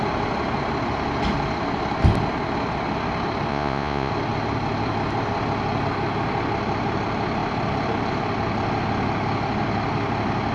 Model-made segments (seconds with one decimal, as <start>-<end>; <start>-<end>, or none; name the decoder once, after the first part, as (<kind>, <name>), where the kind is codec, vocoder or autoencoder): 3.5-4.1 (vocoder, Vocos)